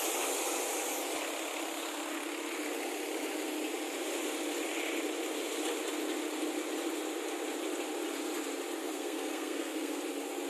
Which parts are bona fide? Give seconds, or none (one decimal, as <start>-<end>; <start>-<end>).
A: 0.0-8.8; 10.0-10.5